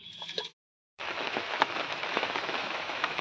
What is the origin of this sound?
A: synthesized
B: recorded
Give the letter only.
A